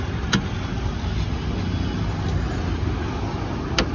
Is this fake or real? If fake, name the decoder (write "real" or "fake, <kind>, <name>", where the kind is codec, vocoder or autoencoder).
real